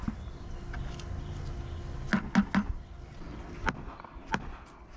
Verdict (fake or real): real